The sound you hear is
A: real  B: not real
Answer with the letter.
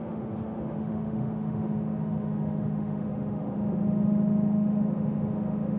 B